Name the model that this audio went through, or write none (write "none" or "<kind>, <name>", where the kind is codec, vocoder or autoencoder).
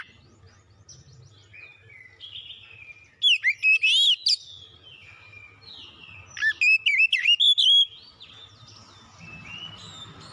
none